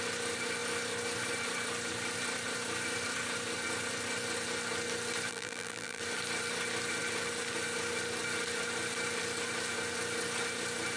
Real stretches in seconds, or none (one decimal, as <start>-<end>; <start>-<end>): 0.0-5.3; 6.0-11.0